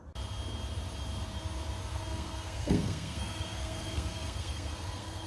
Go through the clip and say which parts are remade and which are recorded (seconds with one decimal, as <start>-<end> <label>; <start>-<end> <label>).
0.0-1.9 recorded; 1.9-5.3 remade